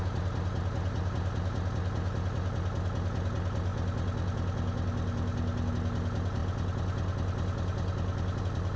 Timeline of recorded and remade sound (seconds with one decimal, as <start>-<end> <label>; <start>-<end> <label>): 0.0-8.8 recorded